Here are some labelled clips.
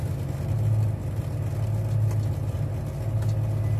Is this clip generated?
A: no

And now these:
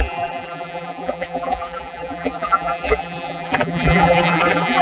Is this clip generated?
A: yes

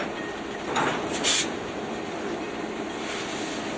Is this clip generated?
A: no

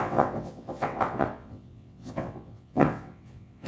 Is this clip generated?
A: yes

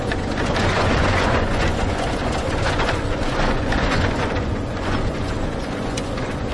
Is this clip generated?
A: yes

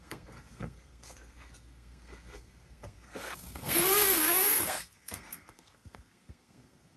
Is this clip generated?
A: yes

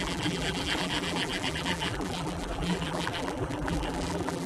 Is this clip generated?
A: yes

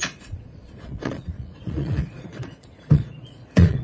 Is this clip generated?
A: yes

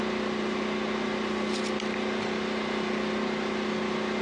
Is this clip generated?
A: no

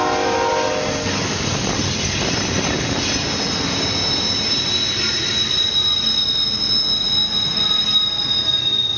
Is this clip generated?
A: no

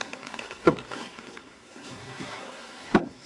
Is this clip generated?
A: yes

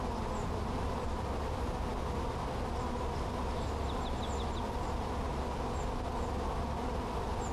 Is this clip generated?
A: no